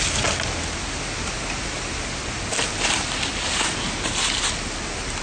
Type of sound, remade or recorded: recorded